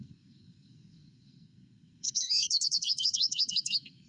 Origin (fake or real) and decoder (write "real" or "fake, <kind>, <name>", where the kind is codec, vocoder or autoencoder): fake, codec, SNAC